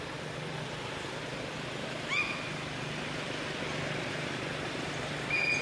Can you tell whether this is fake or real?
real